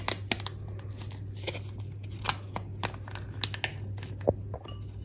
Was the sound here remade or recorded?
recorded